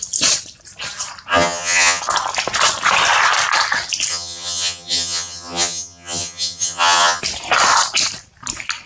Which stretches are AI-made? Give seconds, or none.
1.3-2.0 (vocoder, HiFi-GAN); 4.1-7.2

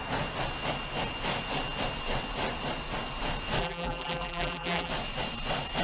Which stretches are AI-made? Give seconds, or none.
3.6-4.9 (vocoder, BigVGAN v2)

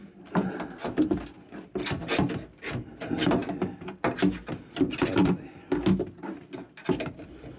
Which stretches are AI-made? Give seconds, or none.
none

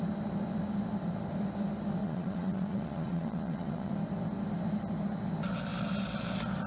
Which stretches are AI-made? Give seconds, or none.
2.0-3.9 (vocoder, Vocos)

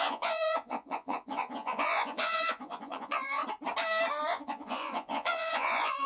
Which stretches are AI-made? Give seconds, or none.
0.0-3.4 (vocoder, Vocos); 4.3-6.1